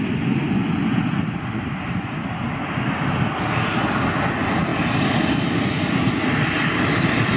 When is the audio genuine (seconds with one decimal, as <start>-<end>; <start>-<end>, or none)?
0.0-7.4